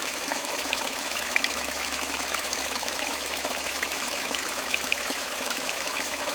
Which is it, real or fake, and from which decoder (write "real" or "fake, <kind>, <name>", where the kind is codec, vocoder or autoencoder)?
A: fake, autoencoder, DAC-VAE